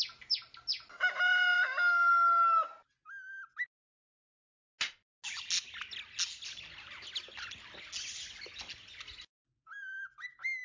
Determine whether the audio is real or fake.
real